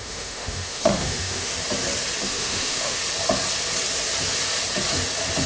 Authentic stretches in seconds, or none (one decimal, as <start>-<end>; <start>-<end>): 1.5-2.2; 3.0-5.5